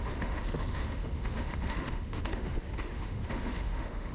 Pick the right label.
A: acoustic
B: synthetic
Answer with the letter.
B